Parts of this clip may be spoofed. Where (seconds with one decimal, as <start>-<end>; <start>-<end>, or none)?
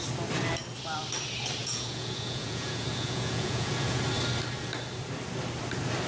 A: 1.6-4.0